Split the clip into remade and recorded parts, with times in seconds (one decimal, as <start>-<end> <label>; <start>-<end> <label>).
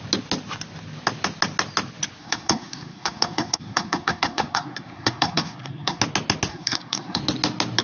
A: 0.0-2.2 recorded; 2.2-6.0 remade; 6.0-6.5 recorded; 6.5-7.2 remade; 7.2-7.8 recorded